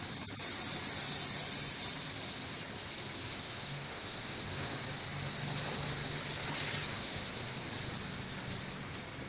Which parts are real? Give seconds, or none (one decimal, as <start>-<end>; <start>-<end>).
0.0-3.3; 4.8-6.9; 7.7-9.3